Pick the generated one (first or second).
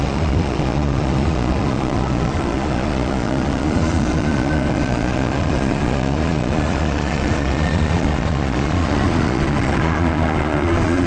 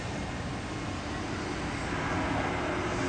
first